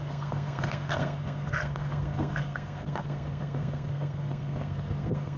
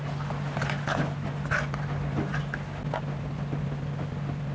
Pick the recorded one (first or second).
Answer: second